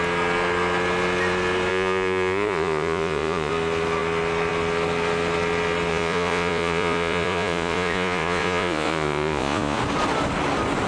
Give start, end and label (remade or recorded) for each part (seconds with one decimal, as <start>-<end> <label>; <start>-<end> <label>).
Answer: 0.0-1.7 recorded; 1.7-3.5 remade; 3.5-5.9 recorded; 5.9-9.8 remade; 9.8-10.9 recorded